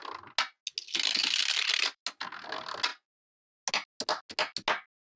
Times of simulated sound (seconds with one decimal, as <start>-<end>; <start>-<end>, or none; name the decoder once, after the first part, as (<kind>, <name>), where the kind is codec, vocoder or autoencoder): 1.2-2.0 (vocoder, BigVGAN v2)